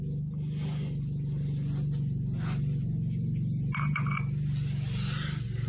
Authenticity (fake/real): real